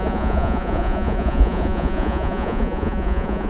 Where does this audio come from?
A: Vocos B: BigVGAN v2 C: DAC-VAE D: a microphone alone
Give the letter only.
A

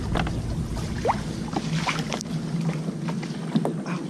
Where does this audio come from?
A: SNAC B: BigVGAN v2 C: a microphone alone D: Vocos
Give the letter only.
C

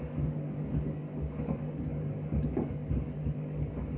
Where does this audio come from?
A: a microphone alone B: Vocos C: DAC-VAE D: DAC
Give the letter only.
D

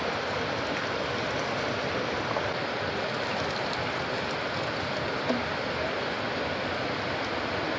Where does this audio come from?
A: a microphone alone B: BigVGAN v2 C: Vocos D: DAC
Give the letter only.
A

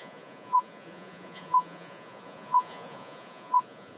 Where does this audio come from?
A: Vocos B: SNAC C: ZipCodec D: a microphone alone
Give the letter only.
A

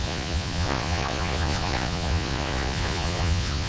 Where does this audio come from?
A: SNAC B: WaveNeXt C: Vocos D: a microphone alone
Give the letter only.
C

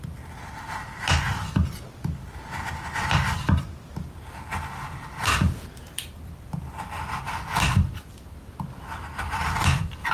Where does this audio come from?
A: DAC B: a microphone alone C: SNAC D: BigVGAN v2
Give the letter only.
B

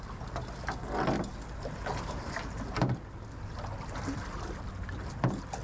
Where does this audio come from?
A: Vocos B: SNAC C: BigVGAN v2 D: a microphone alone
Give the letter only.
D